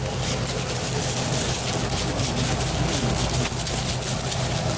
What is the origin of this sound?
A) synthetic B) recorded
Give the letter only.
B